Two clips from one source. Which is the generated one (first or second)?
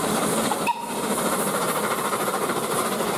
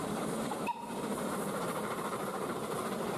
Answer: second